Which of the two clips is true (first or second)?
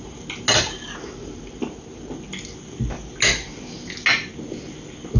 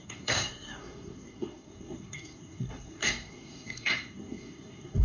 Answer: first